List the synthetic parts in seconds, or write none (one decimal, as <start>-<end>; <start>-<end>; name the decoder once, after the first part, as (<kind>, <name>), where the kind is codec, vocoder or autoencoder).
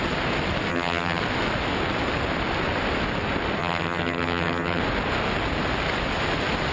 0.7-1.2 (vocoder, HiFi-GAN); 3.6-4.8